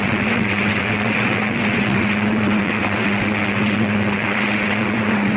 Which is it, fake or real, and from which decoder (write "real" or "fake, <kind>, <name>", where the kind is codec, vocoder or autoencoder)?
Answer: fake, vocoder, WaveNeXt